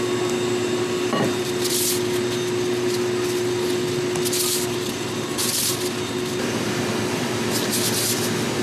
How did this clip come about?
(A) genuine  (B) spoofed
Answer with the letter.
A